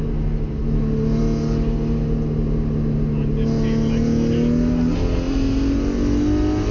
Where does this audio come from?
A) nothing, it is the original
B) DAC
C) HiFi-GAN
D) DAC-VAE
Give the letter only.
A